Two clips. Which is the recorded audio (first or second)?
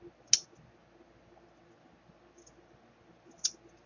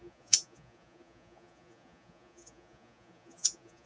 first